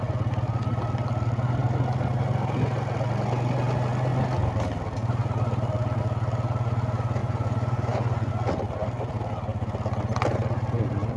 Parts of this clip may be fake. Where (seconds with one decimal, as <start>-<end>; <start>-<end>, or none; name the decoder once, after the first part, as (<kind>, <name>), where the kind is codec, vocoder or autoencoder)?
7.2-8.3 (vocoder, Vocos)